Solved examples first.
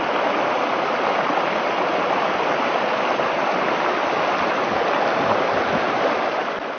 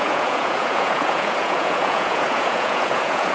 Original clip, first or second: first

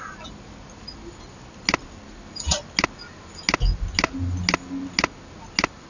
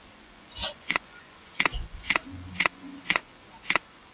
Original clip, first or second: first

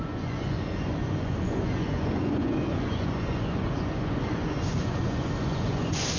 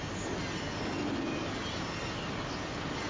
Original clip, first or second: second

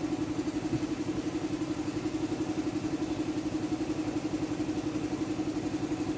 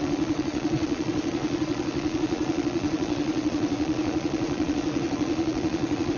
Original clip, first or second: first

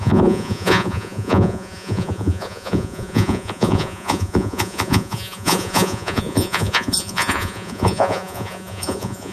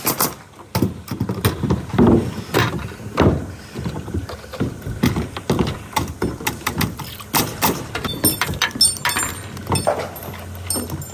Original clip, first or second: second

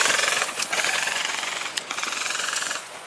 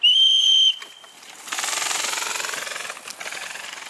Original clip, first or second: second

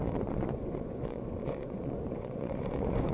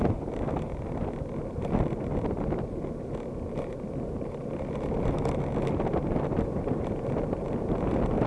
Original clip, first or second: second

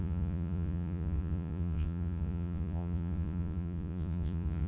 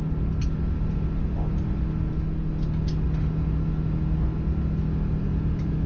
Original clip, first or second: second